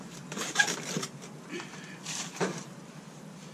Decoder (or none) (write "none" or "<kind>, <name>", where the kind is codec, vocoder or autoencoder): vocoder, BigVGAN v2